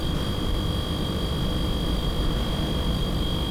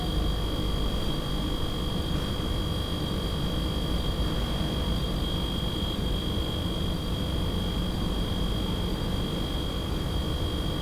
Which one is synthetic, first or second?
first